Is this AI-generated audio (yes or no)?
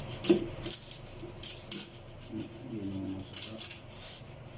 no